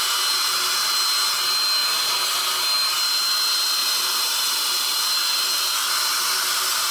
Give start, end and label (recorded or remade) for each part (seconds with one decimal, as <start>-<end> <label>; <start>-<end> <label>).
0.0-1.8 recorded; 1.8-2.4 remade; 2.4-3.8 recorded; 3.8-6.9 remade